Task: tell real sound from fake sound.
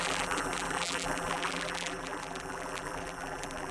fake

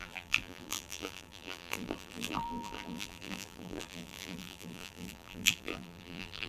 fake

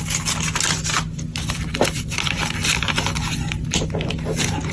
real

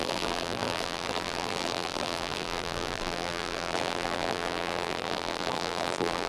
fake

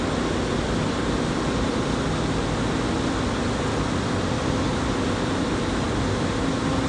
real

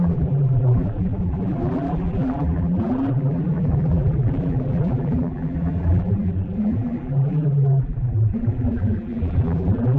fake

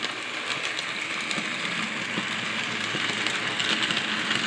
real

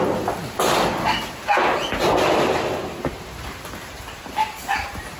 real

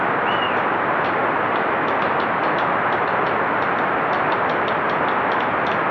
real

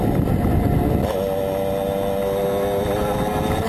real